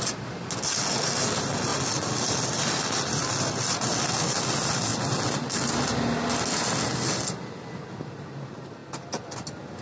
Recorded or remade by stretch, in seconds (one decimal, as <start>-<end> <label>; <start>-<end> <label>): 0.0-9.8 recorded